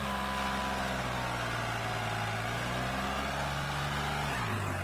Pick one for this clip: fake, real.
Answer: real